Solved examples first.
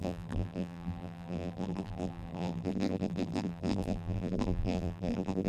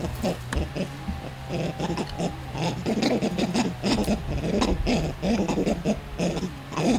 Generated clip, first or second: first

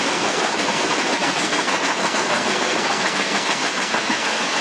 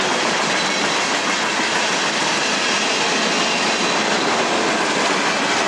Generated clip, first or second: first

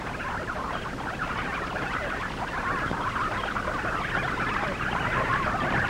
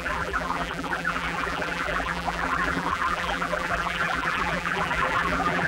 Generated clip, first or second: second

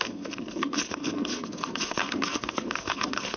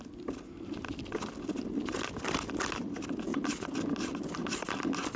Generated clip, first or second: first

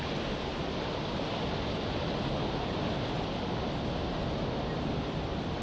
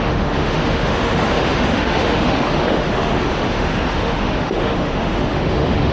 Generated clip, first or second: second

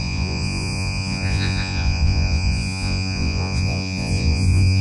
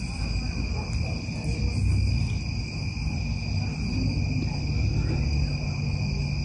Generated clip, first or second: first